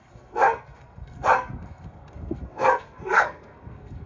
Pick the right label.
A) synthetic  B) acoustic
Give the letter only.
A